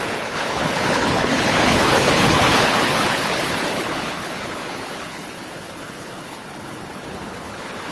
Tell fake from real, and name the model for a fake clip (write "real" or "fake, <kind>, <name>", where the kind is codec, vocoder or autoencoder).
fake, codec, HILCodec